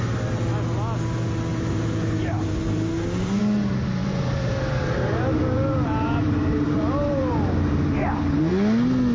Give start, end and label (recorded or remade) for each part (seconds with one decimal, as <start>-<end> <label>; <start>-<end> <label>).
0.0-1.5 recorded; 1.5-3.4 remade; 3.4-4.0 recorded; 4.0-8.5 remade; 8.5-9.1 recorded